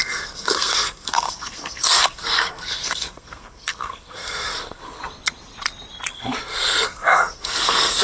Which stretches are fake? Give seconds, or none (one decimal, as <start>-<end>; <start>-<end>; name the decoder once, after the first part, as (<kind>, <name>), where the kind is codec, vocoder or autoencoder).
0.0-5.0 (codec, SNAC); 6.1-8.0